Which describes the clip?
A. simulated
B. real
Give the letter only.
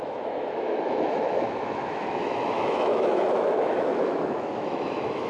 A